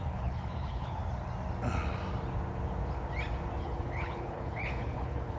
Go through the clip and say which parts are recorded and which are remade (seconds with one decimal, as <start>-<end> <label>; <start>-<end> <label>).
0.0-1.0 remade; 1.0-3.6 recorded; 3.6-5.4 remade